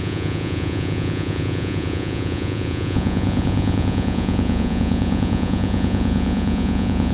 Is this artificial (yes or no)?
yes